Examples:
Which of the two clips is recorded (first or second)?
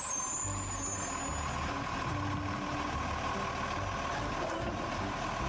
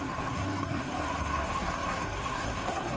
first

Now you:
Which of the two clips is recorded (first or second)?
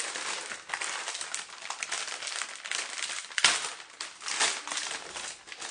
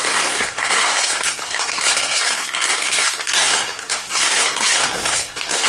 first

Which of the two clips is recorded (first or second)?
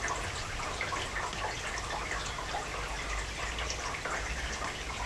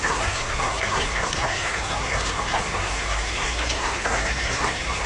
first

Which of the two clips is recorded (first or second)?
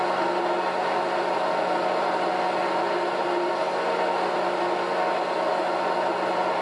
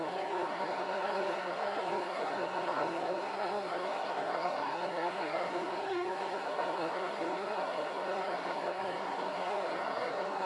first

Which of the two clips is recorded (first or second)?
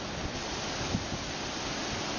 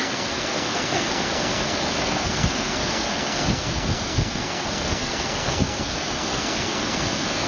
first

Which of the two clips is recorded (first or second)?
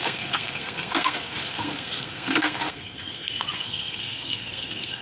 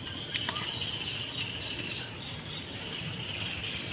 second